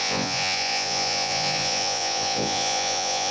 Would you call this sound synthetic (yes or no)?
yes